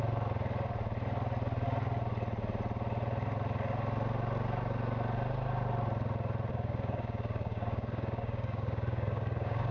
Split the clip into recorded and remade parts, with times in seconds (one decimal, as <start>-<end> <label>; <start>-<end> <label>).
0.0-6.5 recorded; 6.5-9.7 remade